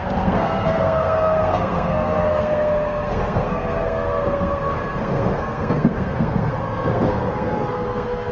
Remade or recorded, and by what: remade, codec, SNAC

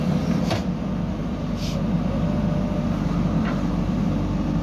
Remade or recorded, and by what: recorded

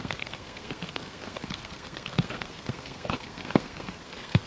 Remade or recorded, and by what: remade, codec, SNAC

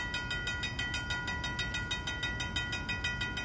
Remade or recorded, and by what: recorded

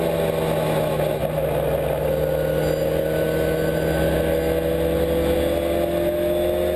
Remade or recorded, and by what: recorded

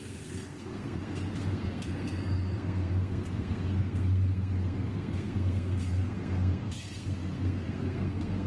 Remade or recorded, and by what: remade, codec, SNAC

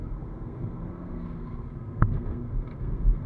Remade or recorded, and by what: remade, codec, SNAC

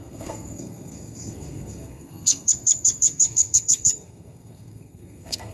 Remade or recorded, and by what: remade, codec, SNAC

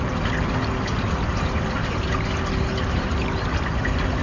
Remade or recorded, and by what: recorded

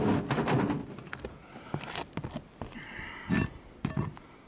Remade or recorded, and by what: recorded